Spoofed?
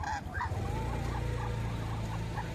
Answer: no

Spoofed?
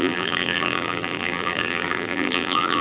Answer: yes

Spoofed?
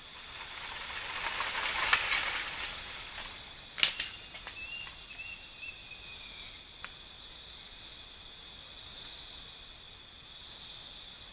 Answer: no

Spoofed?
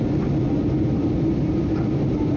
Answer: no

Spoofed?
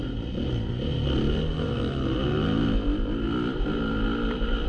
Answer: no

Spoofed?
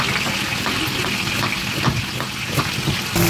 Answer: no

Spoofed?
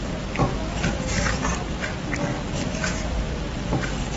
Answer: no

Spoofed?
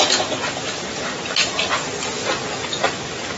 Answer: no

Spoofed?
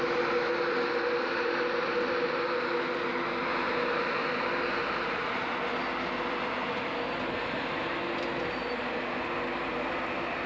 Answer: no